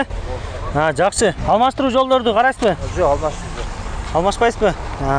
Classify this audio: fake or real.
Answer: real